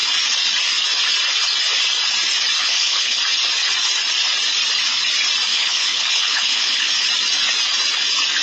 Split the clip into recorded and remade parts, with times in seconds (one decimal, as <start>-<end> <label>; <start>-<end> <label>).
0.0-2.6 recorded; 2.6-3.2 remade; 3.2-5.5 recorded; 5.5-6.9 remade; 6.9-8.4 recorded